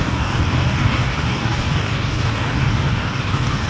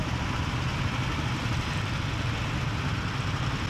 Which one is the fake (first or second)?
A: first